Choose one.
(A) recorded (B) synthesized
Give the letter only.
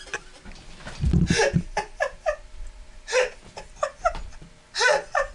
A